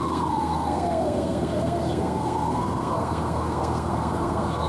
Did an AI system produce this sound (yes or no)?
yes